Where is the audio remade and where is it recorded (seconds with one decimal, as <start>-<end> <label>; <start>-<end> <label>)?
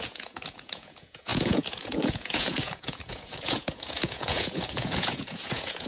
0.0-5.9 remade